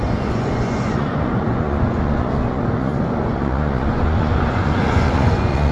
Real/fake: fake